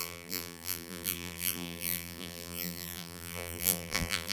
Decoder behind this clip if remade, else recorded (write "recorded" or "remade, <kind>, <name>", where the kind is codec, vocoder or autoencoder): remade, vocoder, BigVGAN v2